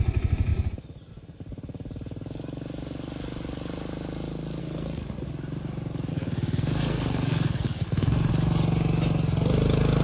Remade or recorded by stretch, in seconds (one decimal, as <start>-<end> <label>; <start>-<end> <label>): 0.0-4.6 recorded; 4.6-5.3 remade; 5.3-6.1 recorded; 6.1-8.3 remade; 8.3-10.0 recorded